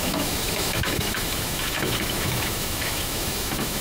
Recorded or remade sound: remade